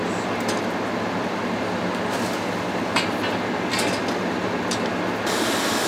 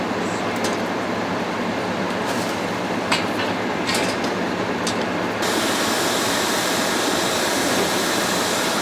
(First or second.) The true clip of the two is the first